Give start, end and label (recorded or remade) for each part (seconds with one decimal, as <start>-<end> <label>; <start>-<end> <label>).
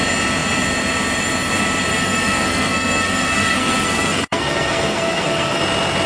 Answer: 0.0-1.9 recorded; 1.9-5.6 remade; 5.6-6.1 recorded